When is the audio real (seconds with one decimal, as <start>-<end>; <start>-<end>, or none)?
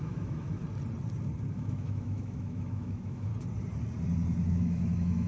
0.6-1.5; 3.3-4.5